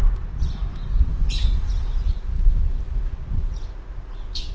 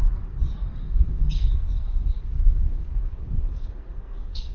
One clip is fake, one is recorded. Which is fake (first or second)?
second